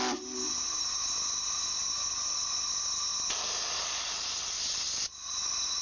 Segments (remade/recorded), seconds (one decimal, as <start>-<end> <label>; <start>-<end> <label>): 0.0-5.8 recorded